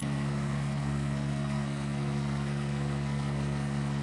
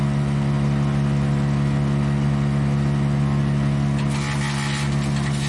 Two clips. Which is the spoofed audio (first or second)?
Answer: first